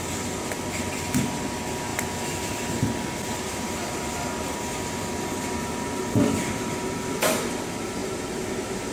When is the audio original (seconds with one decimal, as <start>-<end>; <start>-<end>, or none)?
0.0-8.0